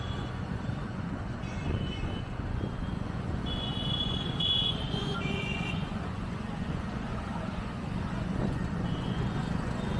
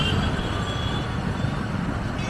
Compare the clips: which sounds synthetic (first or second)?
first